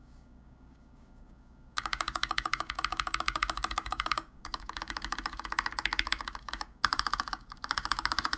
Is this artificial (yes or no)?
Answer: yes